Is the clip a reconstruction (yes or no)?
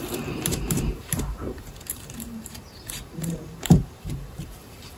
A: yes